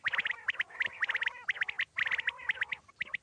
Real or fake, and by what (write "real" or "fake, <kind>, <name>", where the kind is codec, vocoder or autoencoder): real